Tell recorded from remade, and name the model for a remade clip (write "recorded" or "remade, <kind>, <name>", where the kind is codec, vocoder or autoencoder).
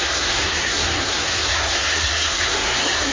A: remade, codec, SNAC